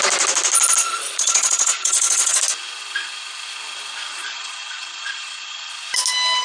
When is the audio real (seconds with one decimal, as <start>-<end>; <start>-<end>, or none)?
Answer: 0.0-0.8; 2.4-4.1; 5.7-6.4

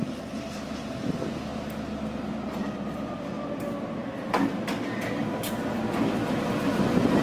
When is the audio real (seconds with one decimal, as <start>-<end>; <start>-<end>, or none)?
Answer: 0.0-7.2